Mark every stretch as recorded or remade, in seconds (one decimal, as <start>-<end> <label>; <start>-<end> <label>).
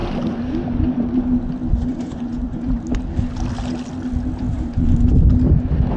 0.0-1.7 recorded; 1.7-2.8 remade; 2.8-4.5 recorded; 4.5-5.1 remade; 5.1-6.0 recorded